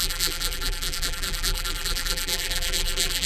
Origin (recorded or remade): remade